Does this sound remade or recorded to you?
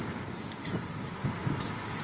recorded